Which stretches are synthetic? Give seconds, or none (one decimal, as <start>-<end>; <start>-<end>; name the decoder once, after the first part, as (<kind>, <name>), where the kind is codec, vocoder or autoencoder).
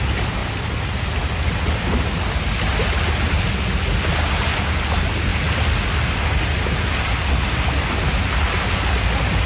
none